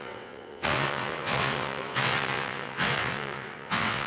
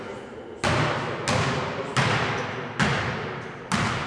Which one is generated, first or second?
first